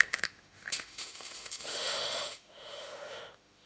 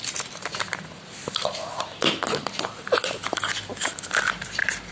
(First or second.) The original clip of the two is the second